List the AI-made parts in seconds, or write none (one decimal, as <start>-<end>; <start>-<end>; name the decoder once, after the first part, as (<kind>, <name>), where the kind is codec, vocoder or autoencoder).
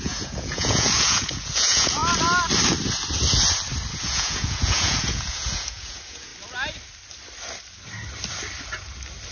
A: 0.0-2.0 (vocoder, Vocos); 3.9-6.3